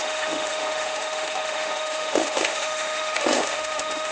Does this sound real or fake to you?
fake